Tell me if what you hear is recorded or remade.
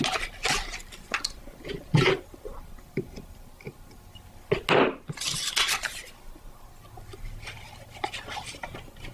recorded